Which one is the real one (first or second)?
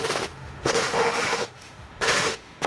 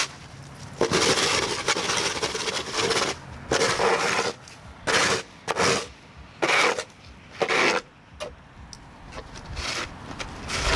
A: second